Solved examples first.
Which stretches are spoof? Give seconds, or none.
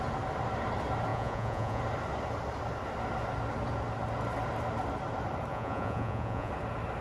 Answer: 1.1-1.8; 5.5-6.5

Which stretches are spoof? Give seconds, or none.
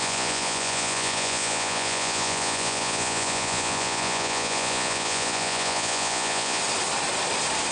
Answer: 0.0-6.6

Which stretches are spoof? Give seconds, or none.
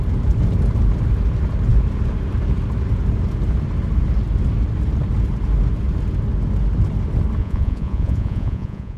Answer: 7.4-9.0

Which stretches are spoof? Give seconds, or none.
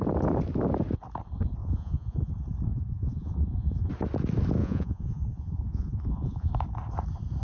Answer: 1.6-2.3; 2.7-3.9; 4.6-6.5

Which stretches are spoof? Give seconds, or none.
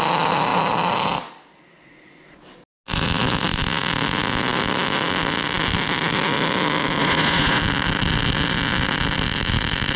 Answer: 7.0-7.6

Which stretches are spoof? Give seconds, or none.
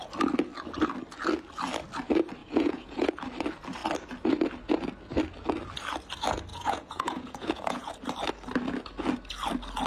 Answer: 2.4-3.1; 6.5-7.9